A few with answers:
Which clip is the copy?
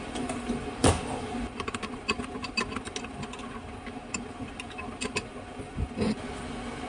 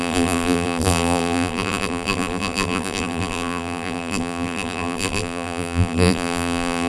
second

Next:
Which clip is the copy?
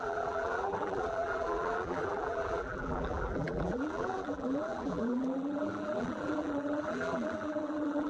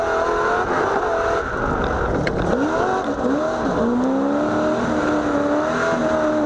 first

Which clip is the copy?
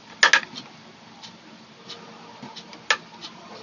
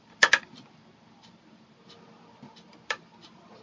second